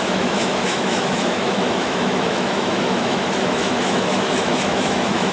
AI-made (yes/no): yes